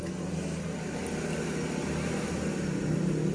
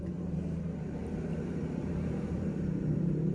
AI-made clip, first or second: second